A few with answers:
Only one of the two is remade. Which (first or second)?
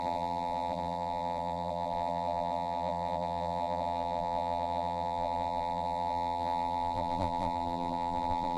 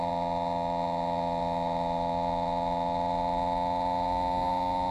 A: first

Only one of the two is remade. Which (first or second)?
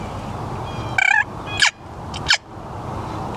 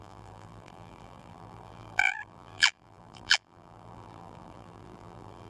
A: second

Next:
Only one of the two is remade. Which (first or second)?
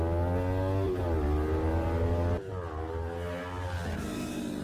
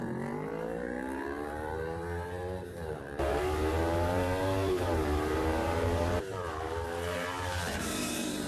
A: second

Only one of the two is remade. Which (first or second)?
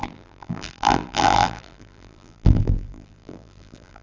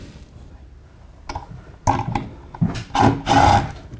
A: first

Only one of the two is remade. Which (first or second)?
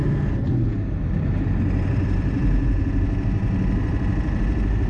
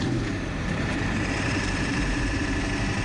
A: second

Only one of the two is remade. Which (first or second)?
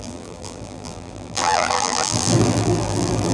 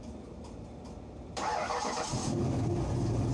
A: first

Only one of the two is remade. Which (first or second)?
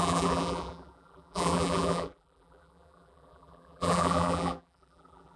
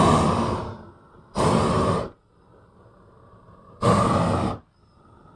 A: first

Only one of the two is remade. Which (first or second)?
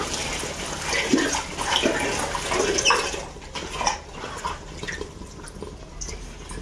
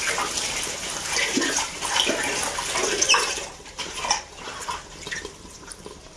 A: second